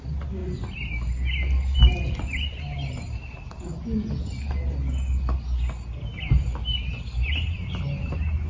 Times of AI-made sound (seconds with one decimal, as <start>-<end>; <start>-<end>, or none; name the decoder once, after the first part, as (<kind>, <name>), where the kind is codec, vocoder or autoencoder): none